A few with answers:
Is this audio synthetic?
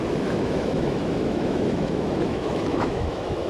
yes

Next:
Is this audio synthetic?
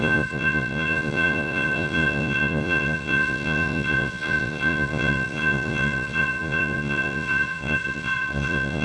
yes